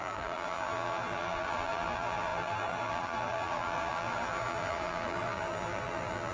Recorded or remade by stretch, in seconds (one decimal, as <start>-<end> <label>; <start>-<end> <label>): 0.0-6.3 remade